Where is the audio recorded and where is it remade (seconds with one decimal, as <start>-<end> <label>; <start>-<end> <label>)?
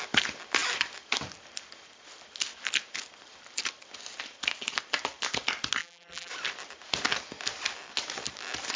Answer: 0.0-5.8 recorded; 5.8-6.3 remade; 6.3-8.8 recorded